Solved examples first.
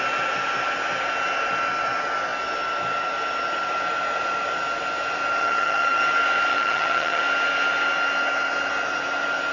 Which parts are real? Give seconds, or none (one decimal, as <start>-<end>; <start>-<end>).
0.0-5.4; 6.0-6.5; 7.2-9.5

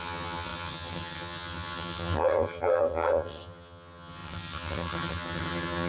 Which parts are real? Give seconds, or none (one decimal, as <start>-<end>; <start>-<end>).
none

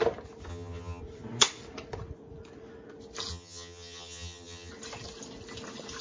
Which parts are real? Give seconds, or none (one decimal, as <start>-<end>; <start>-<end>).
0.0-0.5; 1.0-3.3; 4.7-6.0